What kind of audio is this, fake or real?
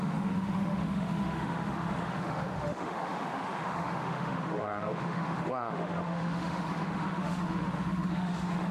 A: fake